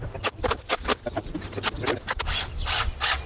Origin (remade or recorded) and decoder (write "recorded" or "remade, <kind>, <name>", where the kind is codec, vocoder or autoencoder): recorded